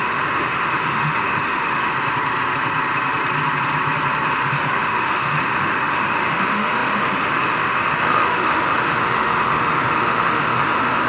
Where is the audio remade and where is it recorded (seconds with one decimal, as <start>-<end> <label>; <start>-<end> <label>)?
0.0-1.9 remade; 1.9-4.5 recorded; 4.5-11.1 remade